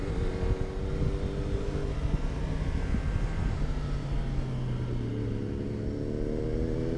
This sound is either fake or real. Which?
real